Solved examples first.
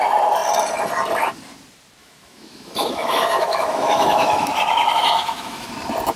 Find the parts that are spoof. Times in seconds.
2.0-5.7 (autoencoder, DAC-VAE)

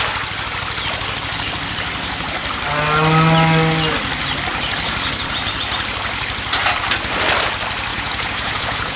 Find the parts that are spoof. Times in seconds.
7.9-9.0 (vocoder, Vocos)